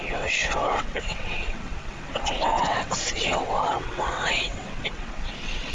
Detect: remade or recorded remade